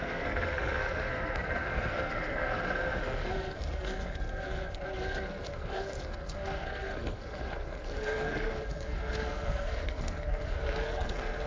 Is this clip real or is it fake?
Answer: fake